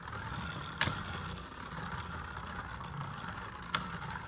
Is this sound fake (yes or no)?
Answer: no